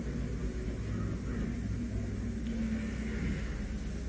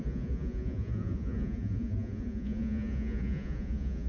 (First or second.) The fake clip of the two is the second